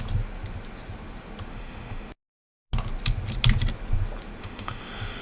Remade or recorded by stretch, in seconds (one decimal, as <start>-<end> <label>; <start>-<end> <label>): 0.0-1.5 recorded; 1.5-2.1 remade; 2.1-4.4 recorded; 4.4-5.2 remade